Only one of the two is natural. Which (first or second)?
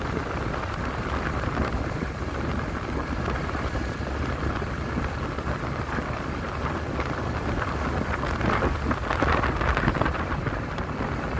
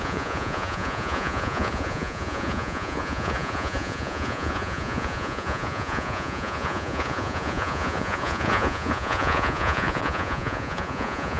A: first